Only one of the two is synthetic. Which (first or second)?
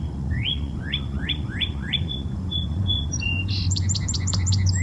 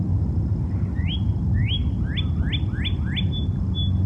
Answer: first